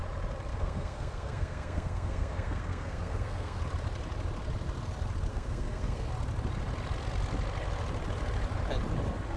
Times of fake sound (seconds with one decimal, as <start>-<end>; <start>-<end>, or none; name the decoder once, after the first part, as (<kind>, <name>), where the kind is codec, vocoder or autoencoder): 0.5-3.6 (codec, SNAC); 5.3-6.1